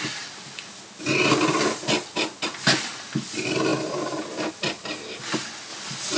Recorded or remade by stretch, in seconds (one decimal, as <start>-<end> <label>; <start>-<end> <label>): 0.0-6.2 recorded